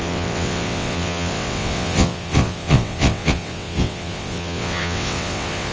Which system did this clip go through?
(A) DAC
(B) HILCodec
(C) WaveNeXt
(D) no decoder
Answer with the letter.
C